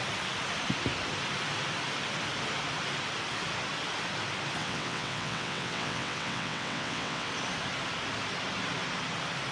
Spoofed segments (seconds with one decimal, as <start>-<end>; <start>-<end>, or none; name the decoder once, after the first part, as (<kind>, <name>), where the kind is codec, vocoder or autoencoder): 4.6-7.3 (vocoder, WaveNeXt)